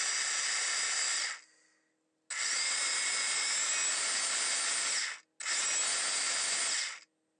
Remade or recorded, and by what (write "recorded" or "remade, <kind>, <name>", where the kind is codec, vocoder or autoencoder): recorded